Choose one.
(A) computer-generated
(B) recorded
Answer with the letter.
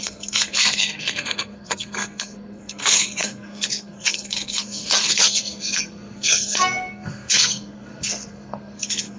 A